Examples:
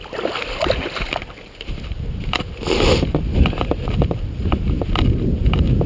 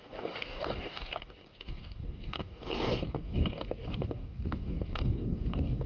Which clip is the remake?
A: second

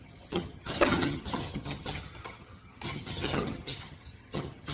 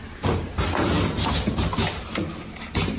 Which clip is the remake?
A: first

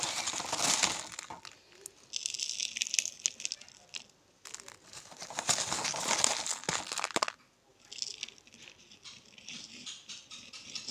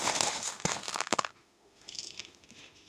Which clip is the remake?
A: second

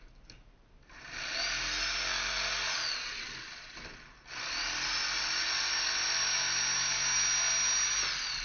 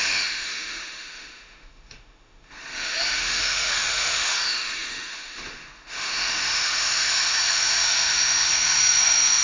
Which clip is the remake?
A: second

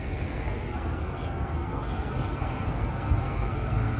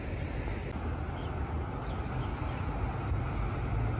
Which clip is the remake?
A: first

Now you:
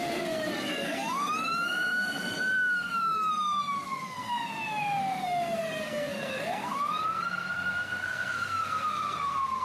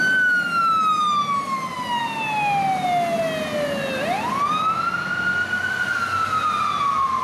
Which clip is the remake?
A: first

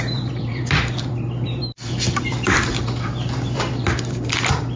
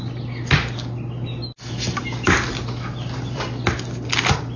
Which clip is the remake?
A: first